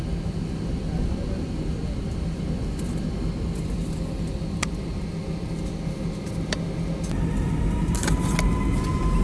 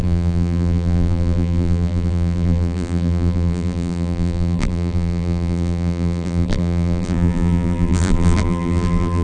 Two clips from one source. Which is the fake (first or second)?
second